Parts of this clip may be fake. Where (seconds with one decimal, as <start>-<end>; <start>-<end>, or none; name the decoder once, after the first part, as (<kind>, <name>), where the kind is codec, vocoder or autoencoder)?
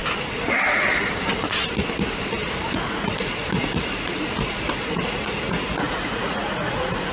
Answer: 2.4-7.1 (vocoder, Vocos)